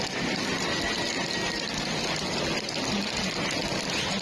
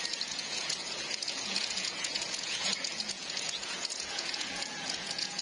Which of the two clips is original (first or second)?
first